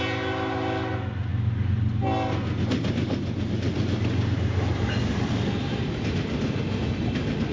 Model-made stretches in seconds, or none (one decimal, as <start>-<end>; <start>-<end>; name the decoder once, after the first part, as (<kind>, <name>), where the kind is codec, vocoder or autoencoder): none